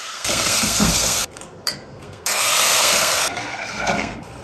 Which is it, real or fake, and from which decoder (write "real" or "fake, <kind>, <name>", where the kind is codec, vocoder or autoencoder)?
fake, codec, SNAC